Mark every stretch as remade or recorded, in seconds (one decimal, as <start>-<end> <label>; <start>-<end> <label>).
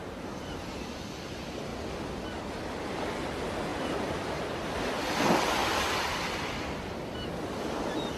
0.0-3.7 recorded; 3.7-4.8 remade; 4.8-5.6 recorded; 5.6-8.2 remade